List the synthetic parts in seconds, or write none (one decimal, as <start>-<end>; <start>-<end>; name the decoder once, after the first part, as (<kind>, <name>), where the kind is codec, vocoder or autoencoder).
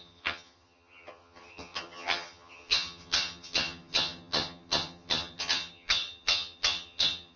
0.0-7.4 (vocoder, HiFi-GAN)